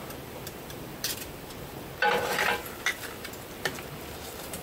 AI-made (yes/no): yes